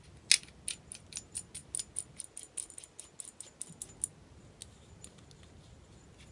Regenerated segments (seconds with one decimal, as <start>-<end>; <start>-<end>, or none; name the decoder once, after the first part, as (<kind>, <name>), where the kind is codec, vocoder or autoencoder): none